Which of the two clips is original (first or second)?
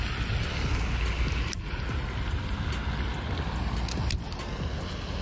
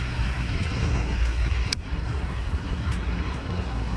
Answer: first